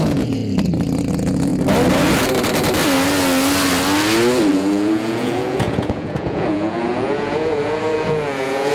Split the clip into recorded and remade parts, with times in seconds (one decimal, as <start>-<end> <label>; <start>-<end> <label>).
0.0-0.4 remade; 0.4-1.1 recorded; 1.1-1.5 remade; 1.5-4.5 recorded; 4.5-8.7 remade